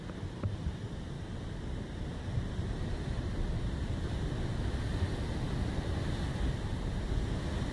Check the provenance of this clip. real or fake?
real